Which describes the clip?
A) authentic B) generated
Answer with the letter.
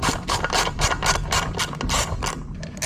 A